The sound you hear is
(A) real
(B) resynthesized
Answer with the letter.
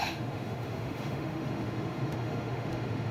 B